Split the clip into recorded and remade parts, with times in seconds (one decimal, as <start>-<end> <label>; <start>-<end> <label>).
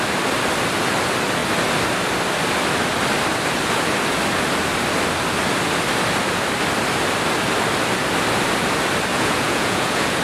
0.0-9.1 recorded; 9.1-10.2 remade